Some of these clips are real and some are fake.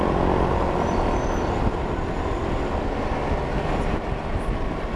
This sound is real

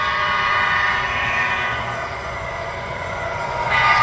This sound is fake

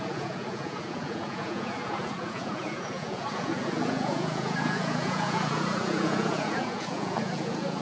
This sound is fake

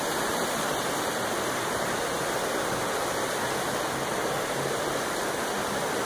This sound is real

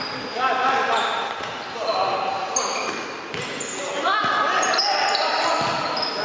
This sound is real